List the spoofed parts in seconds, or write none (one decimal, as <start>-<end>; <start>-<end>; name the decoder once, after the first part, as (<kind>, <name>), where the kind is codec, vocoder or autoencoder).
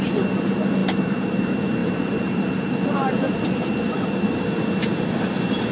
0.0-5.7 (vocoder, BigVGAN v2)